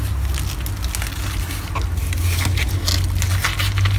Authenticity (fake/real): real